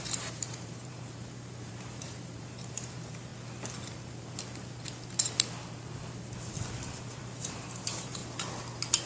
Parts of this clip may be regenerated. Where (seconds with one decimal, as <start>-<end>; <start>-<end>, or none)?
0.0-3.3; 7.2-8.2